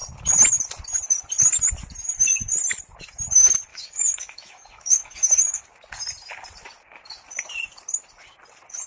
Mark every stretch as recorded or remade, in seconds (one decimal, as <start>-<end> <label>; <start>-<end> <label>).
0.0-3.7 recorded; 3.7-5.6 remade; 5.6-8.9 recorded